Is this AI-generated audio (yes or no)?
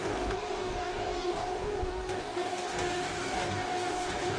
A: yes